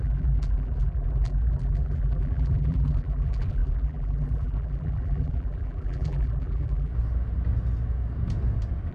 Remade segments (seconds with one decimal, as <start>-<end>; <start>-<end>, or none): 0.0-6.9

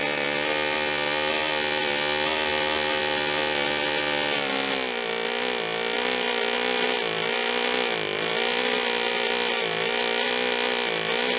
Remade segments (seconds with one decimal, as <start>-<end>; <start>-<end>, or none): none

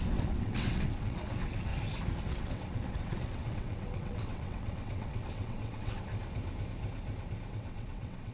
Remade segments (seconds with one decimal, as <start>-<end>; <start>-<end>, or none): 0.0-1.7; 2.2-6.1; 7.5-8.3

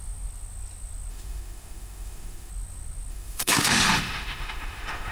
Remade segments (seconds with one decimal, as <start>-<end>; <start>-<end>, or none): 1.1-2.5; 3.1-5.1

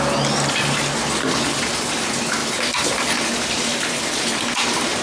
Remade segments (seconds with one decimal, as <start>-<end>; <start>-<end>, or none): none

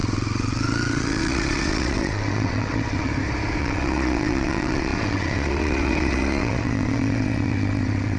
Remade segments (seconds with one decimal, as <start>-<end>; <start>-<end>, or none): 0.0-3.1; 3.6-8.2

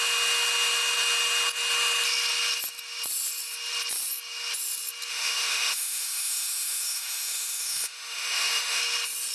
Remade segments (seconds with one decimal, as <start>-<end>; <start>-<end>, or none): 5.1-8.8